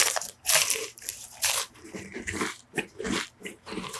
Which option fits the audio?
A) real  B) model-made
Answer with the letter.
B